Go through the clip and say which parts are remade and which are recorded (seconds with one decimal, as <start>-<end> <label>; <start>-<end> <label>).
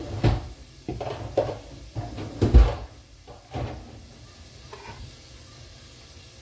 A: 0.0-6.4 recorded